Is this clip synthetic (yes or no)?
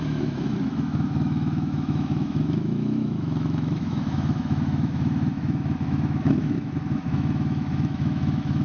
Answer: yes